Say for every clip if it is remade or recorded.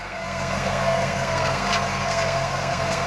remade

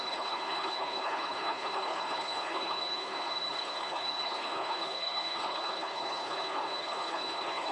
remade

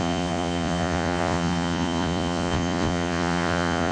remade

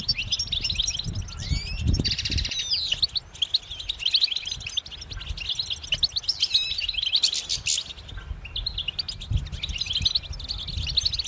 recorded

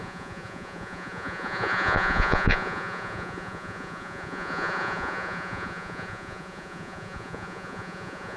remade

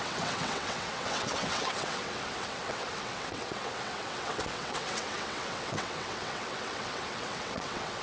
remade